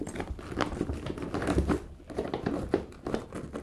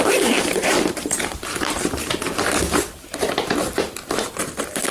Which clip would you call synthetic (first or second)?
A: second